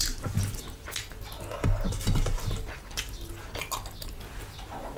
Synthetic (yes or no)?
no